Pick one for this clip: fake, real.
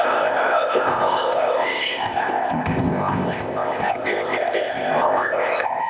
fake